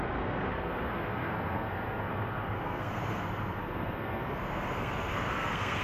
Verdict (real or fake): fake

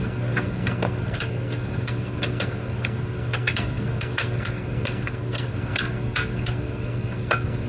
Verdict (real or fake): fake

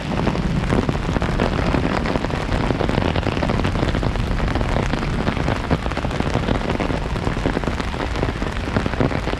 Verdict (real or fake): real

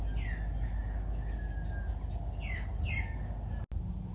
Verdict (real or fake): real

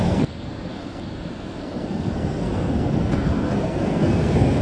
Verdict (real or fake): fake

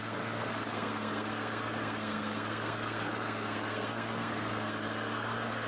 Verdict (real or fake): fake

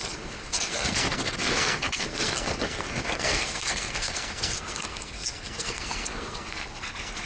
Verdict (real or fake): fake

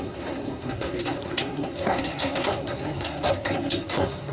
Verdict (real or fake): fake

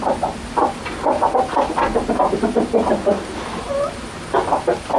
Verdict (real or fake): real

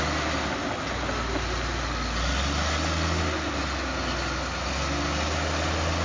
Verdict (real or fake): real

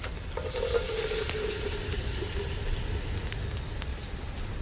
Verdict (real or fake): real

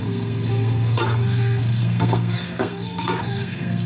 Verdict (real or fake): fake